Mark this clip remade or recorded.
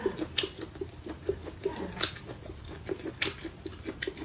recorded